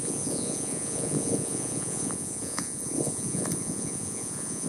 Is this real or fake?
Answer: fake